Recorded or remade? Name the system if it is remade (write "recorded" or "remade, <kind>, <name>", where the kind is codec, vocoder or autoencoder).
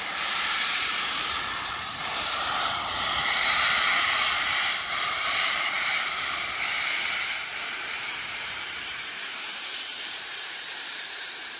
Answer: remade, vocoder, BigVGAN v2